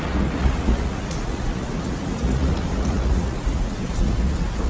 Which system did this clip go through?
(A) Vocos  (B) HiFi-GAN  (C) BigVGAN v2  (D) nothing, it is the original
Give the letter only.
A